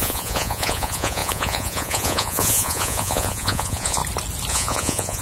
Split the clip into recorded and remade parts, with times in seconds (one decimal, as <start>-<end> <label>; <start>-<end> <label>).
0.0-4.0 remade; 4.0-4.5 recorded; 4.5-5.2 remade